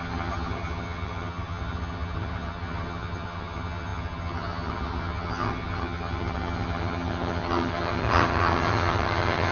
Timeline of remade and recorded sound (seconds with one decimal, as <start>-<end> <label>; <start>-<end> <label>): 0.0-9.5 remade